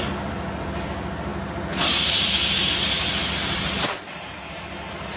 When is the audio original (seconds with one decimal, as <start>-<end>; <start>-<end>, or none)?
0.0-5.2